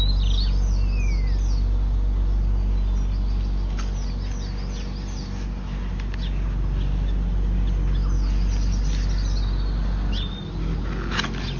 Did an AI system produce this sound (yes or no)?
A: no